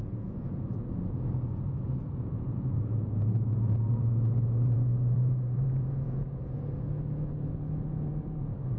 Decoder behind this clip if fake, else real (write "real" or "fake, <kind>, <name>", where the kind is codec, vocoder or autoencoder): fake, vocoder, Vocos